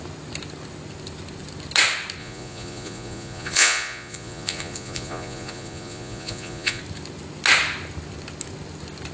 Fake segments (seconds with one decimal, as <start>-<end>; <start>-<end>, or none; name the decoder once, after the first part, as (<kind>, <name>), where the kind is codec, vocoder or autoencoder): 2.2-6.8 (vocoder, Vocos)